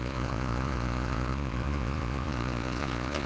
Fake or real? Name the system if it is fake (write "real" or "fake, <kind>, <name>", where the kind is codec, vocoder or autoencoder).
fake, vocoder, Vocos